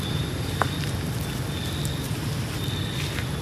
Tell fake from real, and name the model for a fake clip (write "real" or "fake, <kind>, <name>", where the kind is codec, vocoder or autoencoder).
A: real